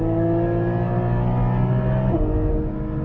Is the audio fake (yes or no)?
no